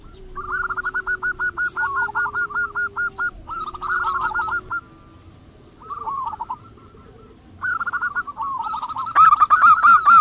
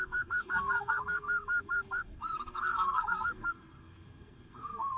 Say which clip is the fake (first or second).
second